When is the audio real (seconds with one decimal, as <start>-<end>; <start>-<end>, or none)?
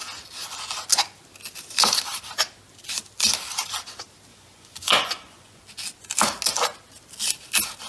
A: 0.0-4.3; 5.6-7.9